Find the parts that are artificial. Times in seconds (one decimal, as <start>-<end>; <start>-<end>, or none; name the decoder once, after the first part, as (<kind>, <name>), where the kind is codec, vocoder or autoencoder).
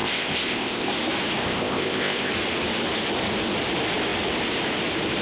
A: 0.0-0.9 (codec, ZipCodec); 1.4-2.3